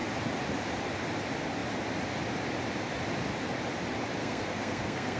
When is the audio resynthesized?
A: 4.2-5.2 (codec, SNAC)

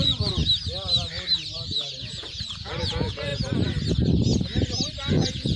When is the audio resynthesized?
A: 0.0-0.4 (vocoder, Vocos); 1.6-3.3; 5.1-5.6

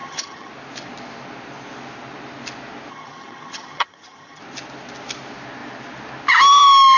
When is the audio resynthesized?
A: 0.0-0.5 (vocoder, HiFi-GAN); 2.9-4.4